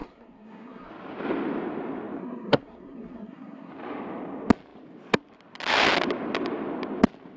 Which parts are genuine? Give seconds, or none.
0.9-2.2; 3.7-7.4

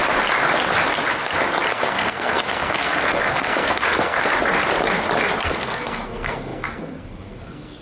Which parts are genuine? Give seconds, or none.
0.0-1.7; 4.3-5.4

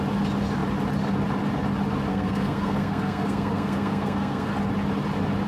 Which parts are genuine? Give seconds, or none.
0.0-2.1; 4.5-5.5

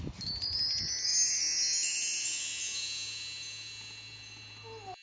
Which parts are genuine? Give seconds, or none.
0.0-5.0